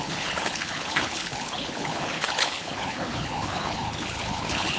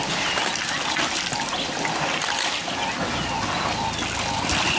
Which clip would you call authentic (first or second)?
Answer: second